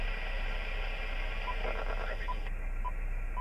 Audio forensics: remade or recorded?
recorded